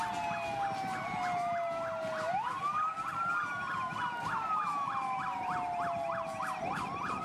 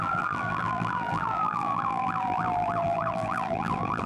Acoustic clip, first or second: first